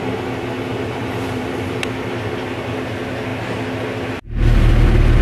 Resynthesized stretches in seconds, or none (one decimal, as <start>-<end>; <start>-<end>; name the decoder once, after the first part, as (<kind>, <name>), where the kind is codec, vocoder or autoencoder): 0.7-1.8 (vocoder, BigVGAN v2)